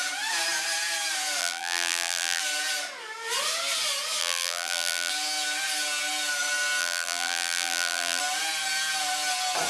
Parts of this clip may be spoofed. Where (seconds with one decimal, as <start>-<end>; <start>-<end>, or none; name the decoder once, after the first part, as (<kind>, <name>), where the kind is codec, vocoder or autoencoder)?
1.4-2.4 (vocoder, BigVGAN v2); 4.2-5.1; 6.8-8.2